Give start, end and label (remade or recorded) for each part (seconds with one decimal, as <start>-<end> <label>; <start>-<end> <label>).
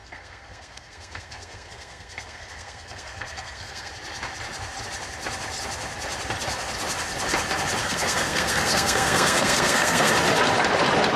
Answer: 0.0-3.9 remade; 3.9-7.8 recorded; 7.8-10.1 remade; 10.1-11.2 recorded